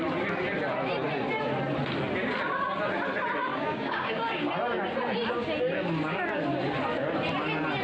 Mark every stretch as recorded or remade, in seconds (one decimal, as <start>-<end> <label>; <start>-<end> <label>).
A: 0.0-3.5 recorded; 3.5-4.5 remade; 4.5-7.8 recorded